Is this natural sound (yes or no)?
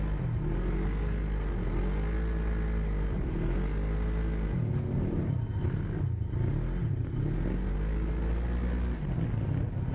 yes